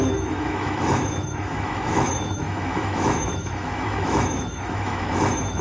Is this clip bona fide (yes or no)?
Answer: no